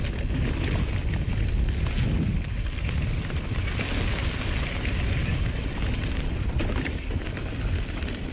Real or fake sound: real